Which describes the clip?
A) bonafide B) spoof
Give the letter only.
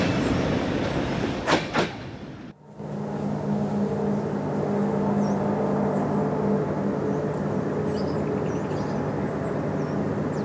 A